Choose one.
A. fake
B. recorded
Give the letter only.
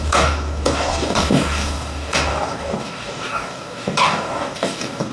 A